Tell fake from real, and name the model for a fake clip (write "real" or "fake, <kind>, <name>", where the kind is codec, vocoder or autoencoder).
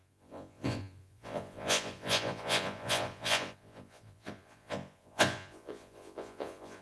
fake, vocoder, Vocos